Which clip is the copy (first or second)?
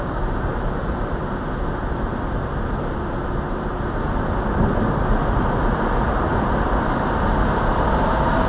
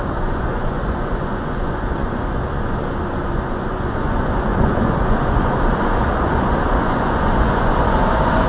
second